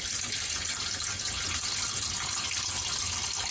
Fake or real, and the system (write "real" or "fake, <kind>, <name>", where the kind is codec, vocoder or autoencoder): real